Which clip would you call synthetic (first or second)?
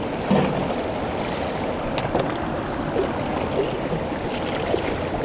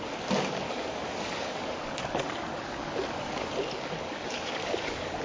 second